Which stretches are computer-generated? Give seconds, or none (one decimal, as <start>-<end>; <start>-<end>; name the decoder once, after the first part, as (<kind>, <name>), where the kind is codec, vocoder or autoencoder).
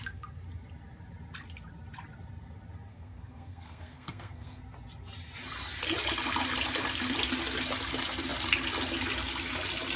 2.9-4.6 (codec, SNAC)